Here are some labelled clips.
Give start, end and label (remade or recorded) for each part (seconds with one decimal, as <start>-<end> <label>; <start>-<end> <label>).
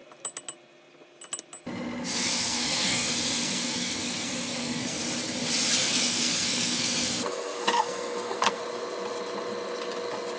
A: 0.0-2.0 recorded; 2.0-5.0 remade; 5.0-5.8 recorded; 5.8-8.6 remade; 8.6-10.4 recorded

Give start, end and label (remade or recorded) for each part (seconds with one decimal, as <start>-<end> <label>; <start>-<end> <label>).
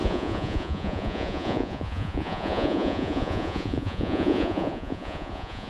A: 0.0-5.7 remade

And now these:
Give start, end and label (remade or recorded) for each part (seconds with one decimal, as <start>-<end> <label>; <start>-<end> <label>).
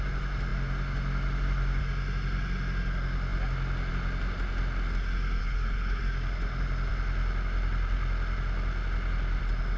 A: 0.0-5.4 recorded; 5.4-6.0 remade; 6.0-9.8 recorded